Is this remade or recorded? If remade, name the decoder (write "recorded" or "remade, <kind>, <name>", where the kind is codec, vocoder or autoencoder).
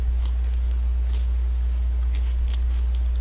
recorded